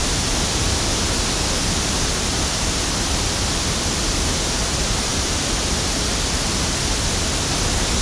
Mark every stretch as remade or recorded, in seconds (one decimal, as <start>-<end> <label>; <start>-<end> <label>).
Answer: 0.0-8.0 recorded